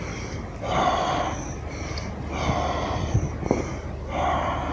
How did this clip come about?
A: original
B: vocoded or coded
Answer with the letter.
A